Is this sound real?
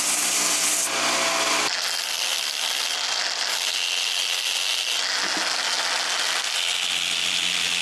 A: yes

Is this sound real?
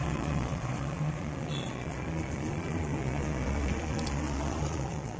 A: no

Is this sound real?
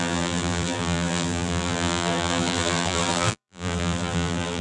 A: no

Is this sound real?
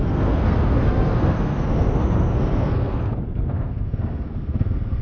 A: no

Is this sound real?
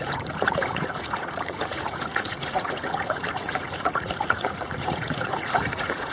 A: no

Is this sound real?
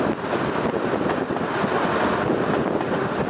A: yes